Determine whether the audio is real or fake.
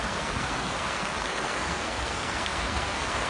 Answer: fake